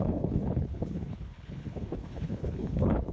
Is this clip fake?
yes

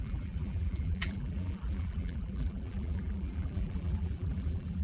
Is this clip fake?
yes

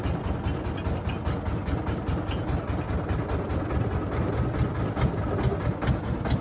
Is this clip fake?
no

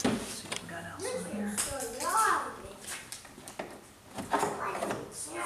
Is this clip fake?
no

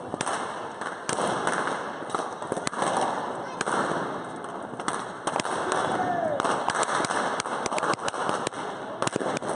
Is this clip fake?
no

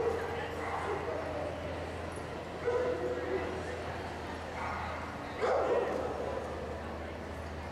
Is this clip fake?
no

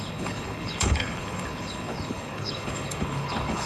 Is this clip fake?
yes